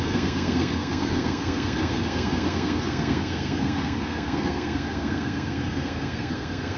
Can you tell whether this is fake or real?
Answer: fake